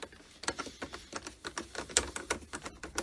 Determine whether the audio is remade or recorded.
recorded